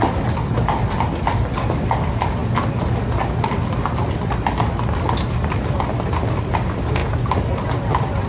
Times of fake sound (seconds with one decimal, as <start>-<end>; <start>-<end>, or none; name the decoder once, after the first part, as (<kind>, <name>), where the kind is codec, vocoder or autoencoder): none